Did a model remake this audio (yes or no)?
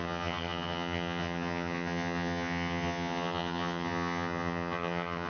yes